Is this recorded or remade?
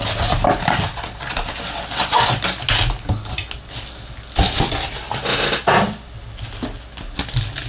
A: recorded